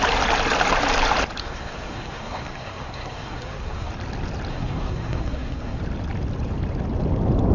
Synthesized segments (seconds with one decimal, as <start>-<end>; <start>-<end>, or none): 1.4-3.9; 4.5-5.8